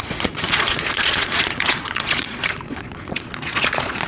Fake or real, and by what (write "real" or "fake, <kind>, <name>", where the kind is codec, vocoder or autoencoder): fake, vocoder, Vocos